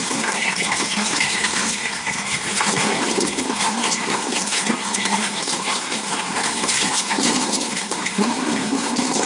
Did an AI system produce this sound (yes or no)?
yes